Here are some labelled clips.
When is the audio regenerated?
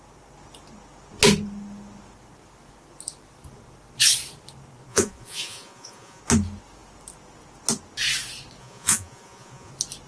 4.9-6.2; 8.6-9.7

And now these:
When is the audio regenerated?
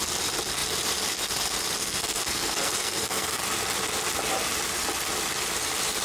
1.8-3.4